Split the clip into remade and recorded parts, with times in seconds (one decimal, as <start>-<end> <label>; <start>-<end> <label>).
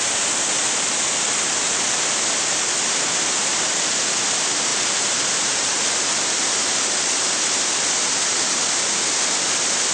0.0-4.7 recorded; 4.7-5.8 remade; 5.8-9.9 recorded